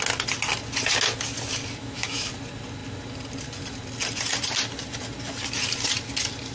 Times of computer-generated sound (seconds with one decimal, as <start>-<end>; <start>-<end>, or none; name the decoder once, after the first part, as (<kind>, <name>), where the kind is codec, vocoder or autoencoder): 1.8-2.3 (autoencoder, DAC-VAE)